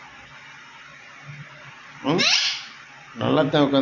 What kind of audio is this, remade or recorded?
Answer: recorded